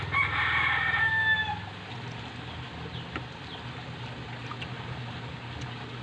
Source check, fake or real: real